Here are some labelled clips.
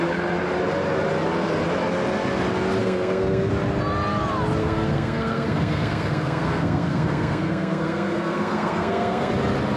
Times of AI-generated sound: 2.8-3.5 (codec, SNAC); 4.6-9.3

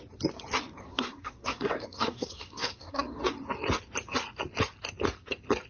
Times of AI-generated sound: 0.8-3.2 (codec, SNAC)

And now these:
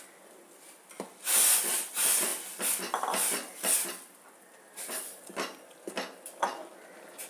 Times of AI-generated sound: none

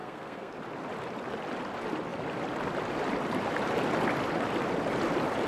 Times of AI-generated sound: 0.0-0.5 (codec, SNAC)